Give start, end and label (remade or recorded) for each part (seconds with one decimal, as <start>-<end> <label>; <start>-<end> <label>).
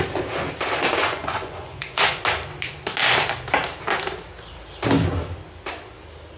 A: 0.0-1.0 recorded; 1.0-2.2 remade; 2.2-6.4 recorded